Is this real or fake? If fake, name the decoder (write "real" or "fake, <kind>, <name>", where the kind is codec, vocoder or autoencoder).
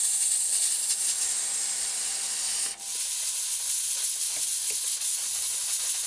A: real